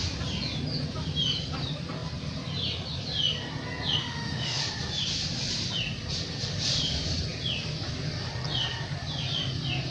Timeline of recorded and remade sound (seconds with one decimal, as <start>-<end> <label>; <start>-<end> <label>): 0.0-4.0 recorded; 4.0-4.6 remade; 4.6-9.9 recorded